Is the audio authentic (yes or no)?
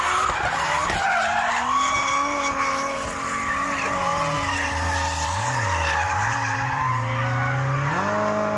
yes